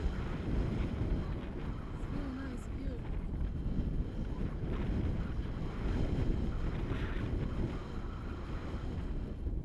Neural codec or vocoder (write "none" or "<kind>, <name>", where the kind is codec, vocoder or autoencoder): none